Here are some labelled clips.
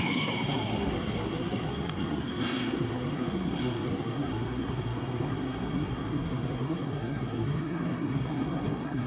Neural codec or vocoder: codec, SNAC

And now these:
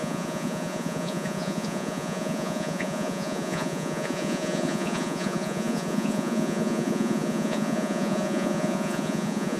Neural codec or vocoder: vocoder, Vocos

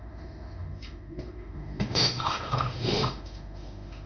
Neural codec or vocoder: autoencoder, DAC-VAE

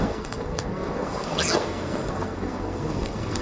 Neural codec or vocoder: codec, SNAC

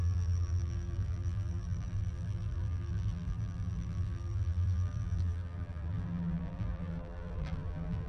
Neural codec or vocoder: vocoder, BigVGAN v2